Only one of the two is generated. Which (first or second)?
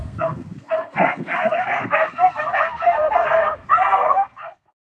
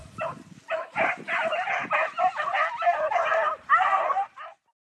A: first